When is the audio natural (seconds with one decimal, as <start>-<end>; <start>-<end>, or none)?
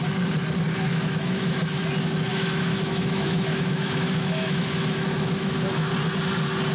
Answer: 0.0-0.9; 1.6-2.3; 5.9-6.7